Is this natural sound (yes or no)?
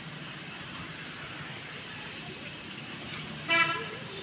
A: no